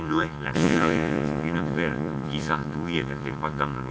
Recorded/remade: remade